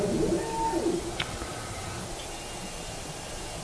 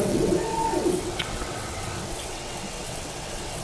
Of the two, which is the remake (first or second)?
second